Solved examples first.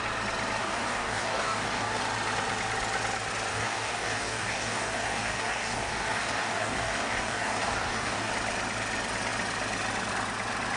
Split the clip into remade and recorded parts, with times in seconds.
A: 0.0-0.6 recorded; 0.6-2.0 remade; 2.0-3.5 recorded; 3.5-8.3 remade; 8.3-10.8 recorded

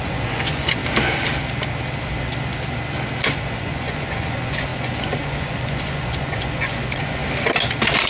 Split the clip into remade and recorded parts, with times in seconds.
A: 0.0-0.8 remade; 0.8-3.3 recorded; 3.3-7.2 remade; 7.2-8.1 recorded